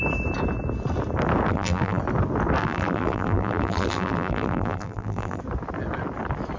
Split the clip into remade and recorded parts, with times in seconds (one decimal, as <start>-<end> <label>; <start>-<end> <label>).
0.0-1.5 recorded; 1.5-2.0 remade; 2.0-2.6 recorded; 2.6-5.4 remade; 5.4-6.6 recorded